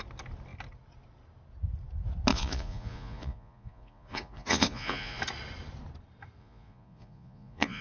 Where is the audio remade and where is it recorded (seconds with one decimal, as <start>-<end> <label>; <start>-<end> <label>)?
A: 0.0-2.3 recorded; 2.3-5.2 remade; 5.2-6.4 recorded; 6.4-7.8 remade